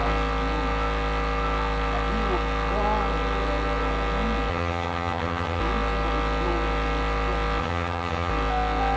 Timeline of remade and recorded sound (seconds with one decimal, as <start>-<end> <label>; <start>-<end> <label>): 0.0-4.5 recorded; 4.5-5.6 remade; 5.6-7.6 recorded; 7.6-8.3 remade; 8.3-9.0 recorded